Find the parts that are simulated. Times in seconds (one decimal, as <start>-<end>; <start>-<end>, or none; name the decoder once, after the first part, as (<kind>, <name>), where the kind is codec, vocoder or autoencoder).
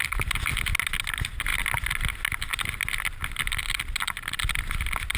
none